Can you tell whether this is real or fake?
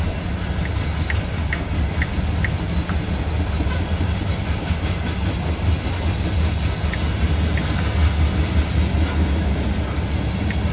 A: real